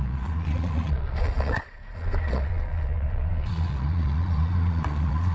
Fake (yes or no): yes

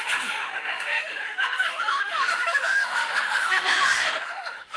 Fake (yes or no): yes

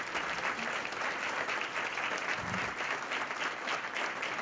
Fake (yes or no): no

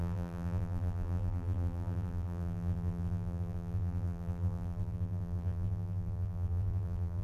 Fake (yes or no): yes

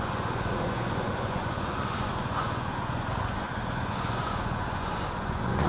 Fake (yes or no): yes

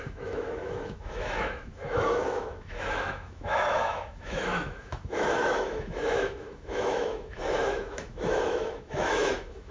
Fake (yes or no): yes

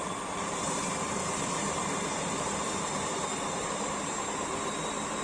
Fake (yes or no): yes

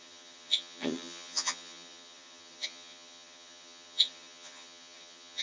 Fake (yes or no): yes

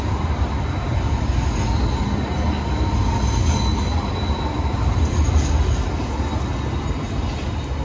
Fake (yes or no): no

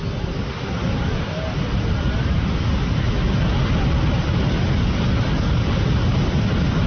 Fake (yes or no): no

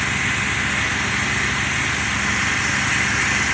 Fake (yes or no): no